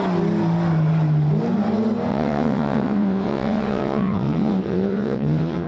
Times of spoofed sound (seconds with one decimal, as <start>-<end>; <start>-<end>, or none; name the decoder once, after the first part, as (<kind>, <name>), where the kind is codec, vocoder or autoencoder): 2.1-5.7 (vocoder, WaveNeXt)